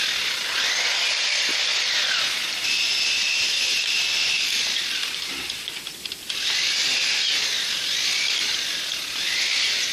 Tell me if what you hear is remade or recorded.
recorded